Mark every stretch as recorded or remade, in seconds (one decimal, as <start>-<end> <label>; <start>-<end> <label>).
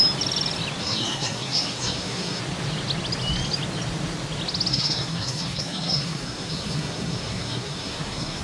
0.0-0.8 recorded; 0.8-2.4 remade; 2.4-4.7 recorded; 4.7-8.4 remade